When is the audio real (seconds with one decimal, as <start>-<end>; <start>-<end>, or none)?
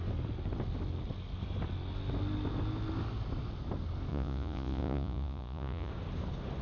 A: 0.0-4.1; 5.9-6.6